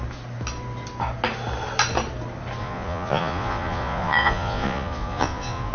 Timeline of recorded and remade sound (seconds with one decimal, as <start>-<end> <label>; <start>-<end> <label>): 0.0-2.6 recorded; 2.6-5.7 remade